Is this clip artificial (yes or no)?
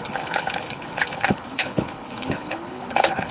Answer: yes